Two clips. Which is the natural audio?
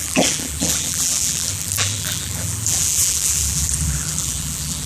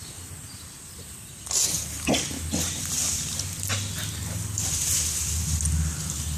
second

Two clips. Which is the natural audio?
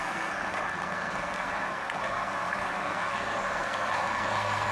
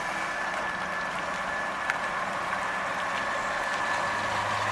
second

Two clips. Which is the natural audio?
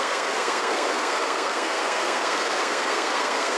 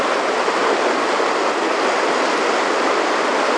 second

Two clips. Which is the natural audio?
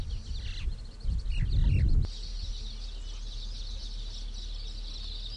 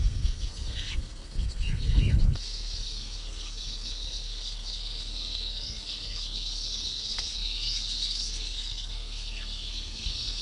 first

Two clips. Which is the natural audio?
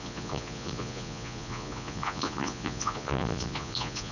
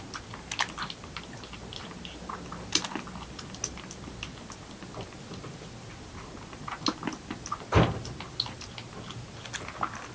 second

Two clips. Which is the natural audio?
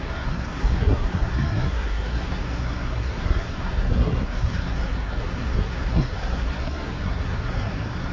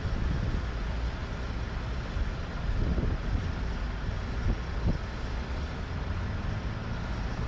second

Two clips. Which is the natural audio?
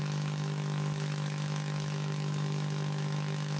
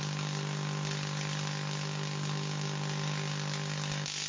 second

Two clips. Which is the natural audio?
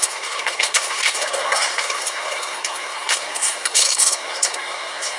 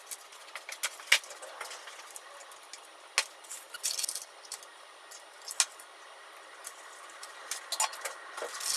second